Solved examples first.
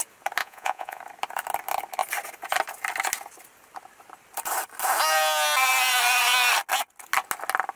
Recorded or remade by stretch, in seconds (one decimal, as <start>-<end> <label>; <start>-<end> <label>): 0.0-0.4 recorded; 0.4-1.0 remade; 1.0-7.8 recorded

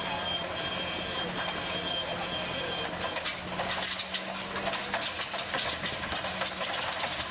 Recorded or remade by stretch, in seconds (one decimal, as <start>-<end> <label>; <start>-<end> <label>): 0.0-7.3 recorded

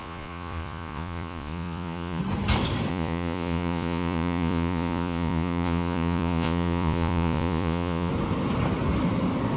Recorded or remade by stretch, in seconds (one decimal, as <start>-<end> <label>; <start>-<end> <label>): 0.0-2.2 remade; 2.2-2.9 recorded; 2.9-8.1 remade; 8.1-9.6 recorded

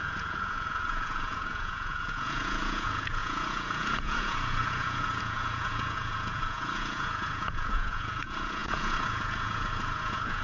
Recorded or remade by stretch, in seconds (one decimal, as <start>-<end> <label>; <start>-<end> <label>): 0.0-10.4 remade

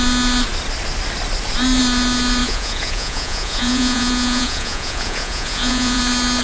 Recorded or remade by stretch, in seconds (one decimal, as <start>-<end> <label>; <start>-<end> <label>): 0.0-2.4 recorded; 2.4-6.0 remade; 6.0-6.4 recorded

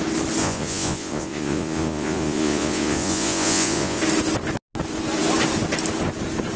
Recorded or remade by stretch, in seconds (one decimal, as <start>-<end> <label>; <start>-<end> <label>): 0.0-0.4 recorded; 0.4-4.0 remade; 4.0-6.6 recorded

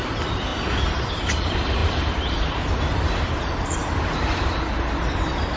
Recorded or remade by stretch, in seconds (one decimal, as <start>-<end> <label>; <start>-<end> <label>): 0.0-5.6 recorded